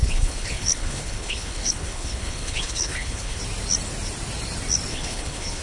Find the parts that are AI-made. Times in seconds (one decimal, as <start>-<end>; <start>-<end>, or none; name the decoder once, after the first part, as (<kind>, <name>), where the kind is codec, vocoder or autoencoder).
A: 0.0-3.4 (codec, HILCodec); 4.9-5.6